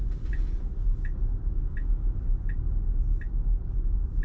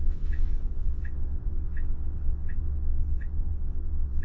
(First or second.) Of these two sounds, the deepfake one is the second